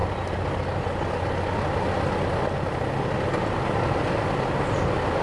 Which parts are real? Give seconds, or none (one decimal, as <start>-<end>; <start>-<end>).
0.0-5.2